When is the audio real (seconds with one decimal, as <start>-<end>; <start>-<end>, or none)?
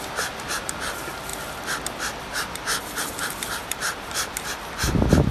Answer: 0.0-3.6; 4.5-5.3